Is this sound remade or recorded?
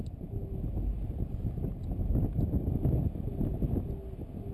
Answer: recorded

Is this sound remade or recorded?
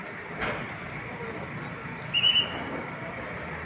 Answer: recorded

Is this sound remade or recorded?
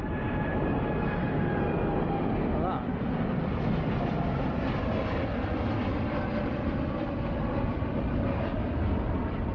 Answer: recorded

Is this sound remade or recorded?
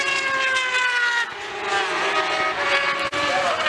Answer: recorded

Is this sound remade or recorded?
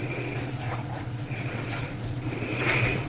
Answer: remade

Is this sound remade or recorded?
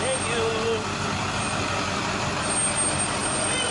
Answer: recorded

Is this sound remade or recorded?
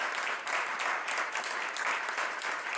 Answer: recorded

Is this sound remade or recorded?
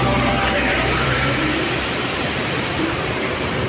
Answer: remade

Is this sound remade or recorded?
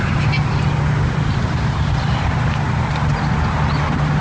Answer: recorded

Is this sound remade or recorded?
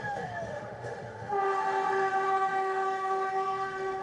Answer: remade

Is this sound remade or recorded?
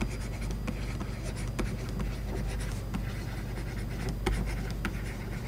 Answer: recorded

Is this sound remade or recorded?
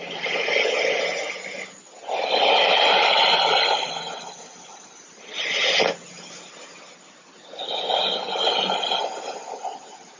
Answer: recorded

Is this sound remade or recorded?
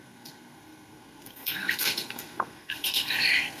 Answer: remade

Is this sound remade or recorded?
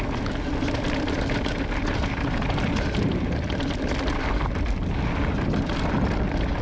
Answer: recorded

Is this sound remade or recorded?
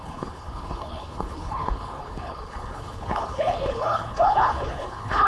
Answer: remade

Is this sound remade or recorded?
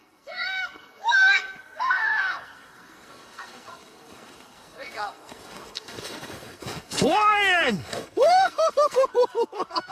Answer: remade